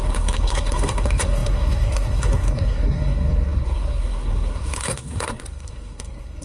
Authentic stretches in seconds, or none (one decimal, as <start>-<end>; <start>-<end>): none